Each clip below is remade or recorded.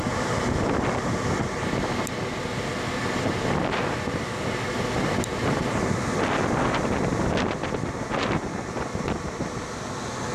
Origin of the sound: recorded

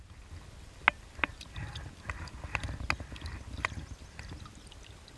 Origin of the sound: recorded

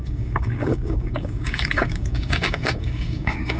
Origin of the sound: remade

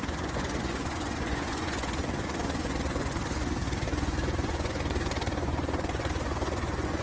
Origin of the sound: remade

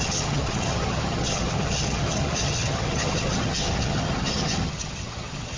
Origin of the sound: remade